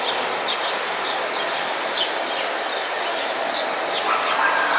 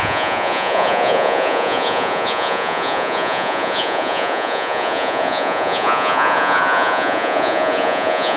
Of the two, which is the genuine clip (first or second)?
first